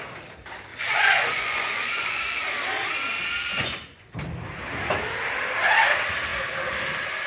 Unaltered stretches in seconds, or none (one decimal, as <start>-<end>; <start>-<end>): 0.0-0.7; 2.4-3.5; 4.1-7.3